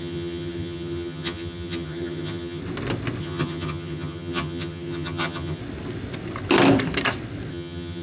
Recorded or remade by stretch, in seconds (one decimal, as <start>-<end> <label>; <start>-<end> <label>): 0.0-2.6 remade; 2.6-3.2 recorded; 3.2-5.6 remade; 5.6-7.5 recorded; 7.5-8.0 remade